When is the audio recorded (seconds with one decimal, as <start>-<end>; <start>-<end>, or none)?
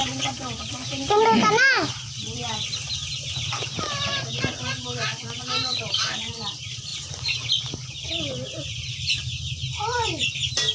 0.0-10.7